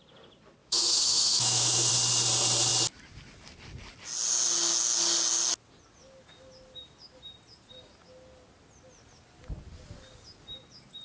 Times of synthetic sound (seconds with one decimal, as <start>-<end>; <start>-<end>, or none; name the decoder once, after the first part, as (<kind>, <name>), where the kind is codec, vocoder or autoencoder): 0.6-1.9 (autoencoder, DAC-VAE)